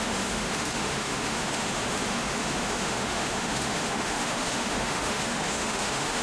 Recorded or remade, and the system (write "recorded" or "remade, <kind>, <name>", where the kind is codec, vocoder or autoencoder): remade, autoencoder, DAC-VAE